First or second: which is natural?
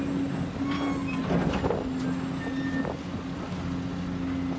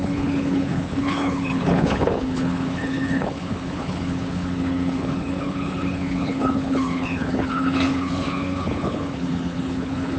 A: first